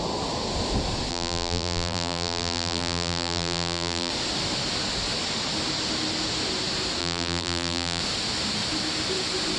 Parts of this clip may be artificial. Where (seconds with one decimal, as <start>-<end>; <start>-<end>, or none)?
1.1-4.1; 7.0-8.0